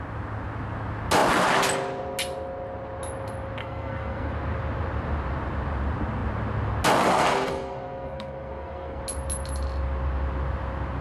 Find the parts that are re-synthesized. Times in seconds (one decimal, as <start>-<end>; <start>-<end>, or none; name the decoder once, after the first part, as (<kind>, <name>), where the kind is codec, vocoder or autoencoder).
3.6-4.3 (codec, SNAC); 7.2-9.0